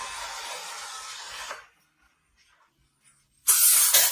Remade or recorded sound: recorded